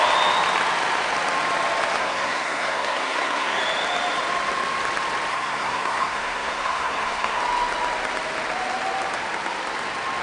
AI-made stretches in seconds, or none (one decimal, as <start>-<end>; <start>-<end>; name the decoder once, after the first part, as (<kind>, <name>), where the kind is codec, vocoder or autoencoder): 2.0-3.6 (codec, SNAC); 5.3-7.4